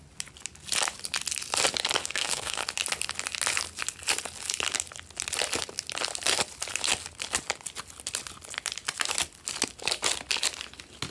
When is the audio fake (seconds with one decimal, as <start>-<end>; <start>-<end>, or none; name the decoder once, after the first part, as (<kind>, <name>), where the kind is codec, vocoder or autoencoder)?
2.0-2.6 (codec, SNAC)